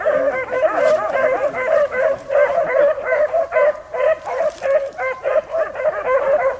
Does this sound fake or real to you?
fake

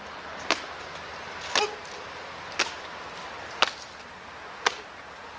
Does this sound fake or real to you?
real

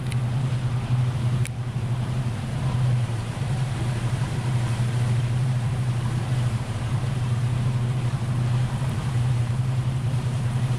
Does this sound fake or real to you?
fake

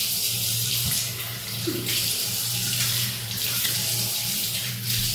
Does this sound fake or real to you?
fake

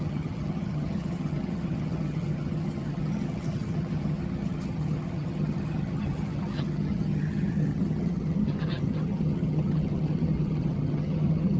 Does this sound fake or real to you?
fake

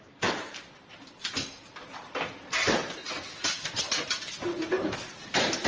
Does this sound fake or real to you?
real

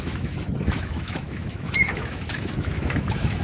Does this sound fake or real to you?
fake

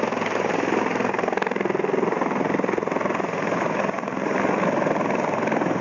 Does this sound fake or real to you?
real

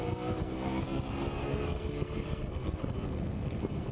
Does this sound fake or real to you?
fake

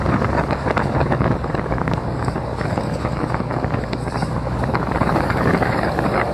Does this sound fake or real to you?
fake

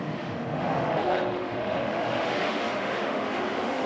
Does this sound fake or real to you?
fake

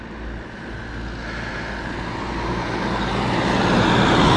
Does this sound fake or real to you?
real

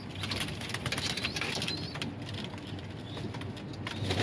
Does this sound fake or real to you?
real